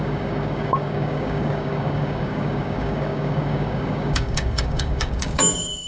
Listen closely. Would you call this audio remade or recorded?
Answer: remade